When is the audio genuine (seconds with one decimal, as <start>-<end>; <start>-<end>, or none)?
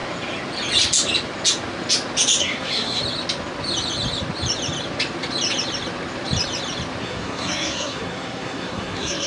0.0-2.4; 3.0-7.0